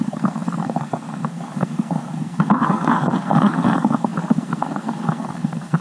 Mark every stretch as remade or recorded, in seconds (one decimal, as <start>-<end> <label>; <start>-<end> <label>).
0.0-5.8 remade